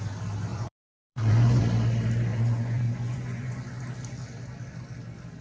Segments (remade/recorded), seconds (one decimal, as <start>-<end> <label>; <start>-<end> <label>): 0.0-0.5 recorded; 0.5-1.6 remade; 1.6-2.3 recorded; 2.3-3.7 remade; 3.7-5.4 recorded